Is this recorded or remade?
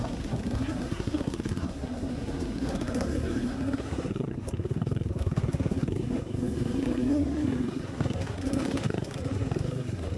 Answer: remade